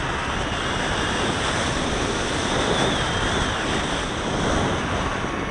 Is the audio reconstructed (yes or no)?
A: no